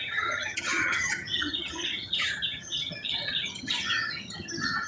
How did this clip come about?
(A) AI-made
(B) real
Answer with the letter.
A